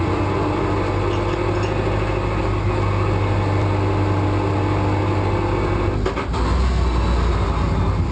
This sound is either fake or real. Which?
real